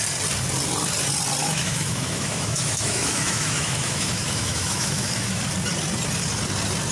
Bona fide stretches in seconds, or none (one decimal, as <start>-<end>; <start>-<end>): 0.0-1.4; 5.4-6.9